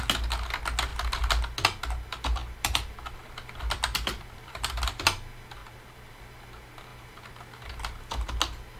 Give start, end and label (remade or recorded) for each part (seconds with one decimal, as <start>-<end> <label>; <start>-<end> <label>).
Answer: 0.0-2.4 recorded; 2.4-4.7 remade; 4.7-5.6 recorded; 5.6-6.2 remade; 6.2-6.9 recorded; 6.9-8.0 remade; 8.0-8.8 recorded